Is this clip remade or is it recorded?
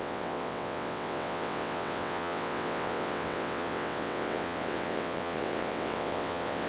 remade